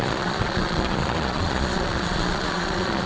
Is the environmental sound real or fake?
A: fake